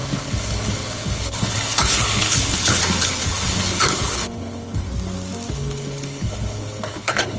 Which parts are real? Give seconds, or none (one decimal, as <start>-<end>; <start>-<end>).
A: 4.9-5.5

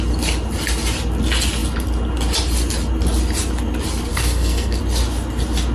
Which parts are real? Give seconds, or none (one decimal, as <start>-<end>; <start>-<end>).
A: 0.0-4.1; 4.8-5.7

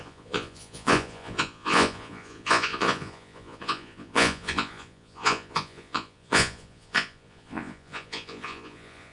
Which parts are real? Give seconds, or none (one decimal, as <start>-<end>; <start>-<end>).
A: none

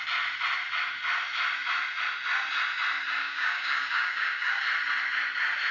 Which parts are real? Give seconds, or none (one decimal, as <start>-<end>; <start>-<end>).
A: 0.0-3.2; 4.6-5.7

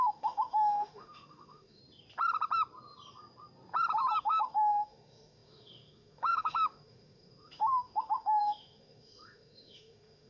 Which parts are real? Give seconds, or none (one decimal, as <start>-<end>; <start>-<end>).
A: 1.8-4.2

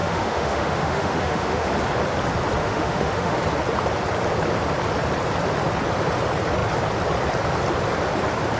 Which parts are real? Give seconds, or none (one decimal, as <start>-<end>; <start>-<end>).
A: 1.7-2.6; 3.4-8.6

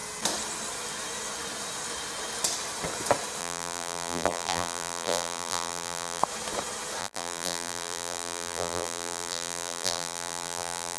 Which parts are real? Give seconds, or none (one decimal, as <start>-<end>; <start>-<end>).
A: 0.0-3.4; 6.2-7.0